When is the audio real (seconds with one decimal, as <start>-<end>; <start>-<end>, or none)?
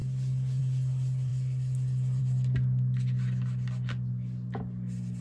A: 0.0-5.2